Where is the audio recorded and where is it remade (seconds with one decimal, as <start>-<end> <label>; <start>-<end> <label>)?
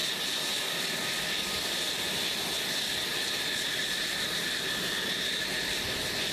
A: 0.0-3.1 recorded; 3.1-6.3 remade